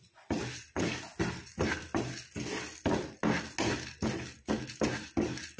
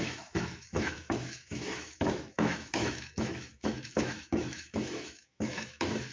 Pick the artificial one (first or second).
second